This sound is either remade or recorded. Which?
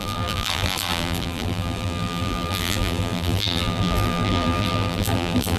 remade